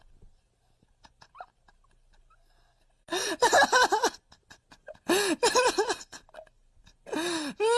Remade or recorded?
recorded